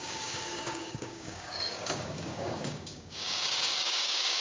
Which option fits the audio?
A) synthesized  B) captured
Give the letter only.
A